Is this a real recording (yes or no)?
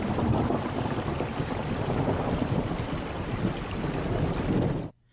yes